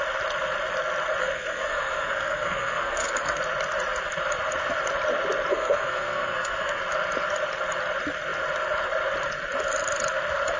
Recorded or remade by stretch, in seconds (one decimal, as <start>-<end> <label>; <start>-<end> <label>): 0.0-1.2 recorded; 1.2-3.4 remade; 3.4-5.5 recorded; 5.5-6.8 remade; 6.8-10.6 recorded